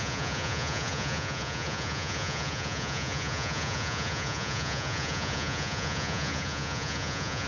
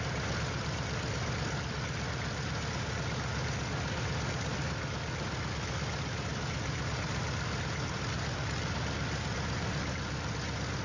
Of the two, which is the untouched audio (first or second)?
second